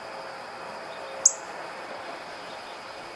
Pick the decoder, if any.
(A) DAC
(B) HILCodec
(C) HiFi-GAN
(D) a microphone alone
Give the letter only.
D